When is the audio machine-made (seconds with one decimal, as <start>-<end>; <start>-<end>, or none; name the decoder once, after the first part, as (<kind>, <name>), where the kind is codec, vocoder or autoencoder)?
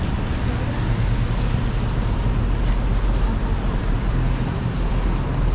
3.8-4.9 (vocoder, BigVGAN v2)